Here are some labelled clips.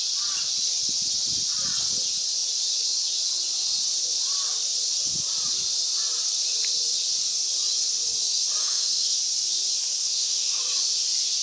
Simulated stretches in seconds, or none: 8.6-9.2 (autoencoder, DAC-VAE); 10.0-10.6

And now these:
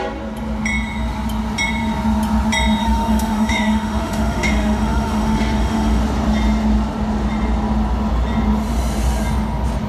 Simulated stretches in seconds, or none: 2.8-6.0 (autoencoder, DAC-VAE)